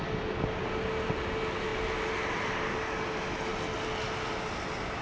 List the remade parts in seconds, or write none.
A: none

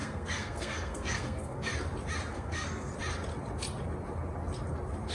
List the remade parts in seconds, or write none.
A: 0.0-1.7 (codec, SNAC); 2.3-2.9

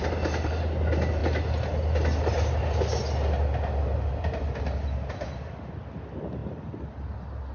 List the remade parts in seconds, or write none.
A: none